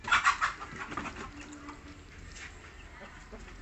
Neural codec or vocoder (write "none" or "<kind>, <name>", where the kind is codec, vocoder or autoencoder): none